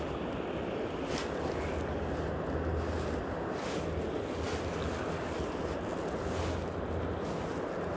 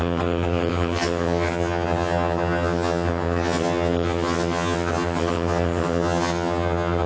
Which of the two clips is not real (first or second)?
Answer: second